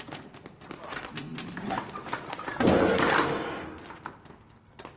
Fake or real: real